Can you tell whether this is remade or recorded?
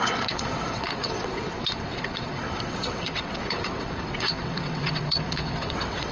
remade